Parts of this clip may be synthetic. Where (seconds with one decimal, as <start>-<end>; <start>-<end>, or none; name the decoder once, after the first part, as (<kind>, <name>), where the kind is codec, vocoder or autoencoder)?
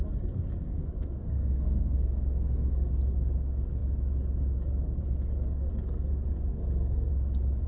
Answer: 0.6-2.9 (codec, SNAC); 6.5-7.1